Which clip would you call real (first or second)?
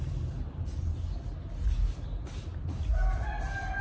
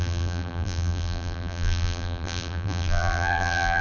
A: first